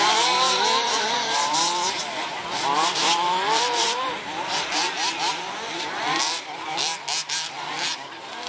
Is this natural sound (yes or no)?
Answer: no